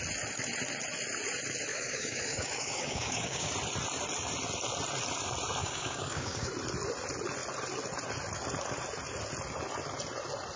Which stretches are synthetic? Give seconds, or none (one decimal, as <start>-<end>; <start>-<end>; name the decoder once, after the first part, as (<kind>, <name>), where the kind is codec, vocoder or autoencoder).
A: 1.7-3.5 (codec, DAC); 5.6-6.5